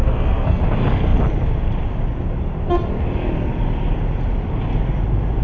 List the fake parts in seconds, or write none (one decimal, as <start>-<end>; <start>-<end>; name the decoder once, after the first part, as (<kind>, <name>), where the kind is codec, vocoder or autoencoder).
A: 0.0-0.6 (codec, SNAC)